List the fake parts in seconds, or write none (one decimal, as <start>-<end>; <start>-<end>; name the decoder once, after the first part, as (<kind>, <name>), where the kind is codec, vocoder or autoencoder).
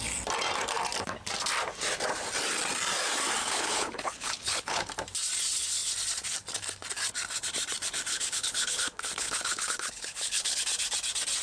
3.4-4.9 (codec, HILCodec); 8.1-10.6